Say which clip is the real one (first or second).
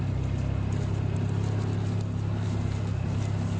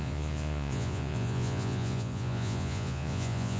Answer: first